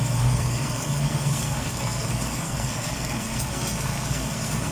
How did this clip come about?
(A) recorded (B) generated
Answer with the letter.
B